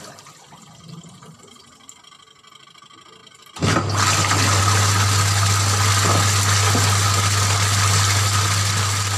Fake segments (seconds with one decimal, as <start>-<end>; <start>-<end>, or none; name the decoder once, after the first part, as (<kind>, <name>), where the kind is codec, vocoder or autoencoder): 3.2-4.6 (vocoder, BigVGAN v2)